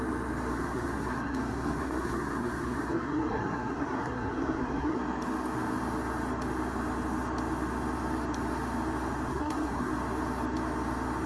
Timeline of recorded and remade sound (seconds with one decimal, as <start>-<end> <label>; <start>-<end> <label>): 0.0-0.5 recorded; 0.5-5.0 remade; 5.0-9.3 recorded; 9.3-9.9 remade; 9.9-11.3 recorded